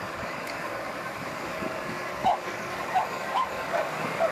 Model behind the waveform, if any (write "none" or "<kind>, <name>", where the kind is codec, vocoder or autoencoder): codec, DAC